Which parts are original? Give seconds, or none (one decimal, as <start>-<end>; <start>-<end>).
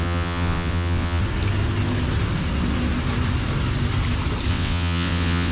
1.2-4.5